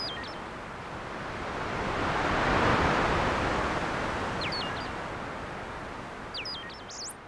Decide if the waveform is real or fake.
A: real